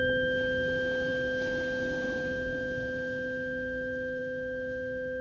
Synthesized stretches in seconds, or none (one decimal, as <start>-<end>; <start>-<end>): none